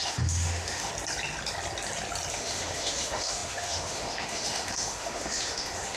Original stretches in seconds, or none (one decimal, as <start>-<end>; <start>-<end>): 0.9-2.3